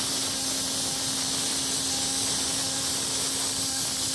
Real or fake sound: real